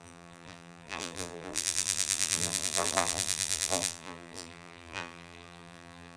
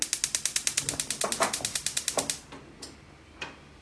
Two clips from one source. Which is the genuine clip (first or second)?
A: second